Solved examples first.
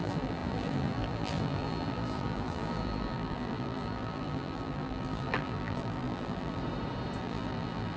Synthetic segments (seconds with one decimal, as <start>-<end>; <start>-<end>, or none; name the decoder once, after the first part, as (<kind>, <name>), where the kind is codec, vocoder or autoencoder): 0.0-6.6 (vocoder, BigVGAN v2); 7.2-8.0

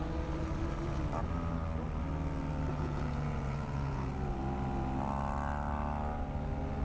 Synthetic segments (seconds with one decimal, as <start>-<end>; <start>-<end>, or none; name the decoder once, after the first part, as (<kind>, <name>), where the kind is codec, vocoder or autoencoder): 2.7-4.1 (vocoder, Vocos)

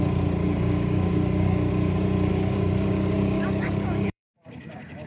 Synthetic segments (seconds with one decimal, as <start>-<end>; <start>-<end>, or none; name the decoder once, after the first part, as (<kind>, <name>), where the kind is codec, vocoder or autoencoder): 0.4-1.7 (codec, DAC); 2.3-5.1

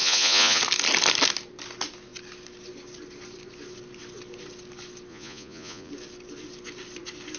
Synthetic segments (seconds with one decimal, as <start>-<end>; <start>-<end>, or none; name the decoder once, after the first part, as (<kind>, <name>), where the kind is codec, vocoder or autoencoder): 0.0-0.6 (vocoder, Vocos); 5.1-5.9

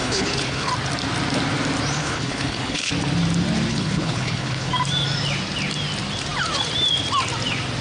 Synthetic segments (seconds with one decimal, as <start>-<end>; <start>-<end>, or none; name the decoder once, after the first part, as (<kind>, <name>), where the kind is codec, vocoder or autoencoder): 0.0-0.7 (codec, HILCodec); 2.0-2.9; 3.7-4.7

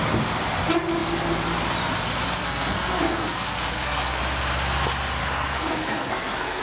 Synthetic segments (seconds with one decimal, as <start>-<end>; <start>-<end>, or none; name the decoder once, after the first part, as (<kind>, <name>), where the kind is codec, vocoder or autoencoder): 2.4-4.2 (codec, SNAC); 5.2-6.6

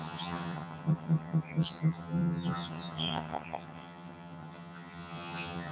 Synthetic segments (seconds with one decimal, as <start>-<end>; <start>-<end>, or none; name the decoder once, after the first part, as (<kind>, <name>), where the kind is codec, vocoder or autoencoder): 0.0-5.7 (vocoder, HiFi-GAN)

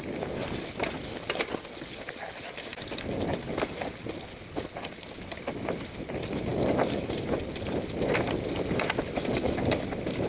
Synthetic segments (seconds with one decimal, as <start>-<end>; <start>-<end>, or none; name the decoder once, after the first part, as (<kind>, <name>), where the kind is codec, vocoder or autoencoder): none